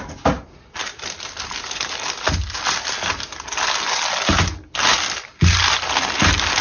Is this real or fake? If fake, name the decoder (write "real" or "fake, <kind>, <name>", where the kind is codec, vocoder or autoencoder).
real